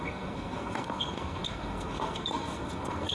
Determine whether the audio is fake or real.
fake